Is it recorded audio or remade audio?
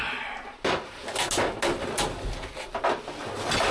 recorded